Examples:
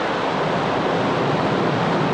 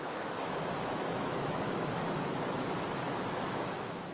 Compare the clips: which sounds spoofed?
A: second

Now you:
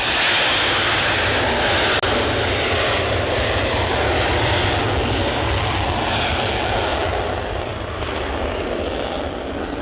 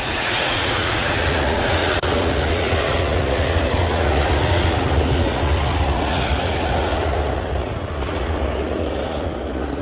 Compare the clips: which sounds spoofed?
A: second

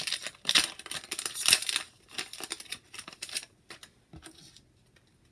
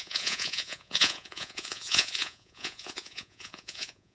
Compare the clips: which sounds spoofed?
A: second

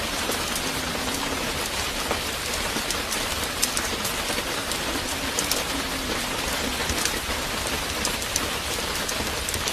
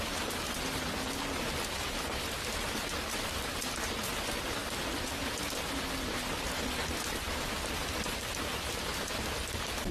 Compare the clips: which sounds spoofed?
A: first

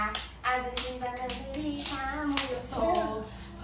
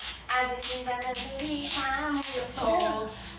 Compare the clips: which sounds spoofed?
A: second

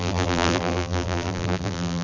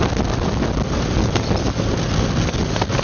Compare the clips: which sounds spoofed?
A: first